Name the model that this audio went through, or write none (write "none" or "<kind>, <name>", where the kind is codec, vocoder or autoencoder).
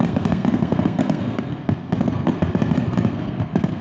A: codec, SNAC